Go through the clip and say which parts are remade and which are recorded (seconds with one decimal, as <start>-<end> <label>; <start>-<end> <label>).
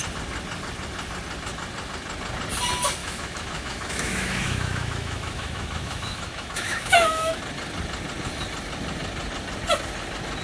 0.0-3.0 recorded; 3.0-7.4 remade; 7.4-10.4 recorded